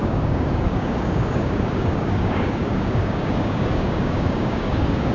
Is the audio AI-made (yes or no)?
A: yes